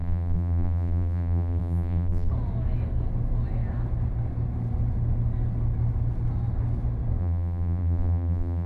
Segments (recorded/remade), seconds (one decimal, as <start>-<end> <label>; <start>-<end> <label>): 0.0-2.3 remade; 2.3-7.2 recorded; 7.2-8.7 remade